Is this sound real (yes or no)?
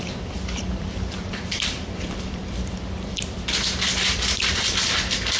no